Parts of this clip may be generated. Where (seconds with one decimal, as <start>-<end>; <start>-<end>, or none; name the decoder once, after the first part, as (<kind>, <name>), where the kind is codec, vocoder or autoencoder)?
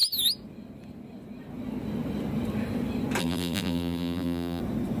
3.2-4.6 (vocoder, BigVGAN v2)